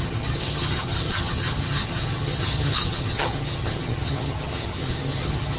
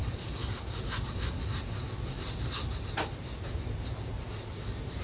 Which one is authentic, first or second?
second